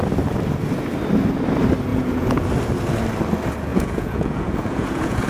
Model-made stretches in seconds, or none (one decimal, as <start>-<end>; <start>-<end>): 1.9-2.5; 3.7-5.3